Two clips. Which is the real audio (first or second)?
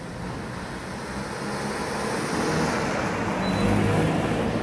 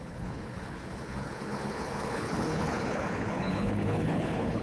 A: first